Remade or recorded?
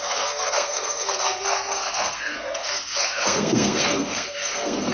remade